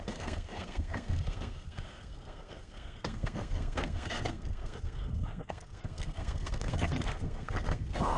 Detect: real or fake fake